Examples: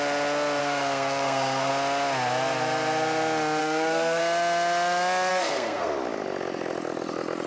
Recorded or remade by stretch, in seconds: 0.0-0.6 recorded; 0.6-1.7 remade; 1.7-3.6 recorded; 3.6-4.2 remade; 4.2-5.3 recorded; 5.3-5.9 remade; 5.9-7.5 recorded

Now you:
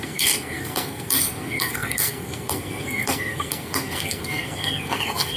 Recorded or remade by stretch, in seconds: 0.0-5.4 remade

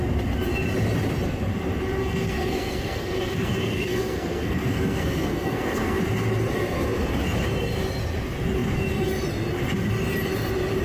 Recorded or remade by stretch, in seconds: 0.0-2.0 recorded; 2.0-6.0 remade; 6.0-10.8 recorded

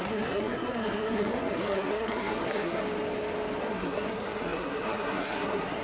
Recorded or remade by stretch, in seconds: 0.0-2.8 remade; 2.8-3.6 recorded; 3.6-5.8 remade

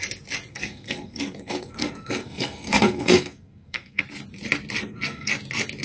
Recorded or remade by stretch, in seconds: 0.0-0.5 recorded; 0.5-4.0 remade; 4.0-4.8 recorded; 4.8-5.3 remade; 5.3-5.8 recorded

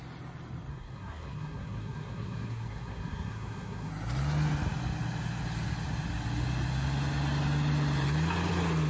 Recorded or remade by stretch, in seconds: 0.0-0.7 recorded; 0.7-3.9 remade; 3.9-8.9 recorded

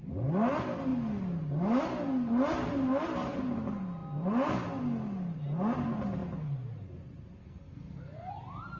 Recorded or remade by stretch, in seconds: 0.0-7.4 recorded; 7.4-8.3 remade; 8.3-8.8 recorded

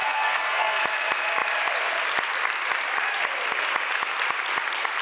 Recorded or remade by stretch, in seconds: 0.0-0.8 remade; 0.8-5.0 recorded